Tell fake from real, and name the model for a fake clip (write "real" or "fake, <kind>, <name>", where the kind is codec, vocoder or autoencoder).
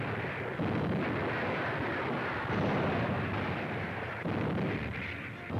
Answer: real